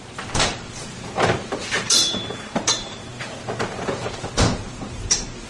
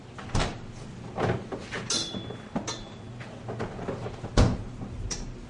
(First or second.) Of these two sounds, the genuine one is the second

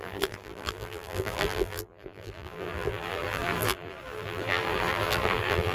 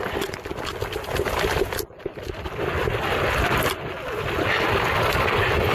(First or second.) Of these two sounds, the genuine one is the second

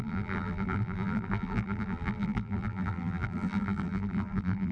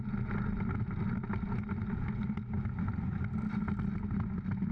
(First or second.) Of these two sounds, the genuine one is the second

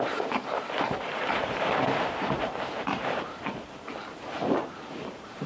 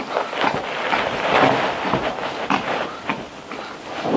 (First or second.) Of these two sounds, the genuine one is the second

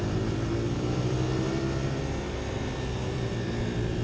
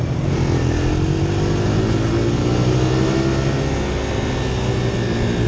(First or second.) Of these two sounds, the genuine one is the second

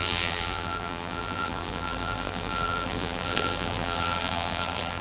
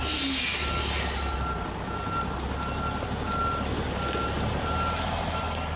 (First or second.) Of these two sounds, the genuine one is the second